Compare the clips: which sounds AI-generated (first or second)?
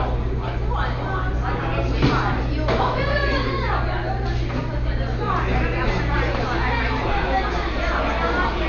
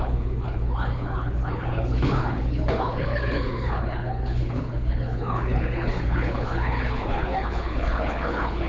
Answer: second